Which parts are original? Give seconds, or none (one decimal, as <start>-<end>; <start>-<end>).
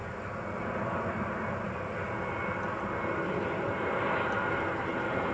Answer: 0.0-5.3